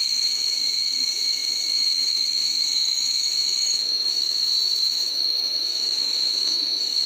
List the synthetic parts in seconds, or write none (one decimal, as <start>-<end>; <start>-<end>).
0.0-7.1